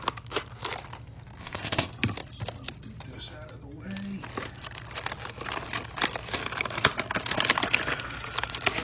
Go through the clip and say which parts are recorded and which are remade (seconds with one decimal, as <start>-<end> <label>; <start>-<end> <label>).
0.0-1.4 recorded; 1.4-1.9 remade; 1.9-8.8 recorded